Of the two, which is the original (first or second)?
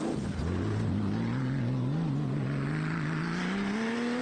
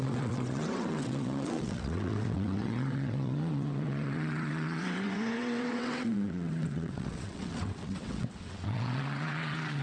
first